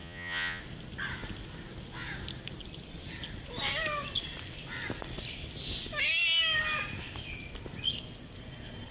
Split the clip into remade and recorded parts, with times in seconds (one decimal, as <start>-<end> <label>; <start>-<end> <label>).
0.0-0.6 remade; 0.6-8.9 recorded